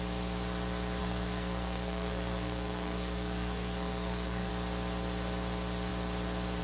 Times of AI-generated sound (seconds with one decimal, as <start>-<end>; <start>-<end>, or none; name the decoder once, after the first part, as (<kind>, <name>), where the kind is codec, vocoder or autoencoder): 1.0-4.5 (codec, SNAC)